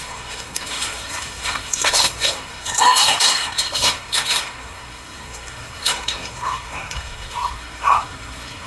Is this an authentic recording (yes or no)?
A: no